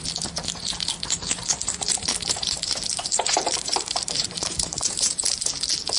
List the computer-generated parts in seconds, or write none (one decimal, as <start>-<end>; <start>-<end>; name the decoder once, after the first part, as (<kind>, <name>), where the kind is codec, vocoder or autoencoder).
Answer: 1.9-5.5 (vocoder, BigVGAN v2)